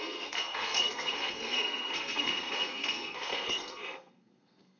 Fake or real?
fake